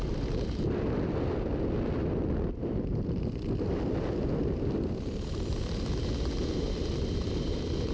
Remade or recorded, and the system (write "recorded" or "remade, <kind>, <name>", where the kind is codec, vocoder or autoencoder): recorded